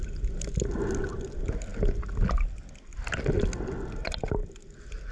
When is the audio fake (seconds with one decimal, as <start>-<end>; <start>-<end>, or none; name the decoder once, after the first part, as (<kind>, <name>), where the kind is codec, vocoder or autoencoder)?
none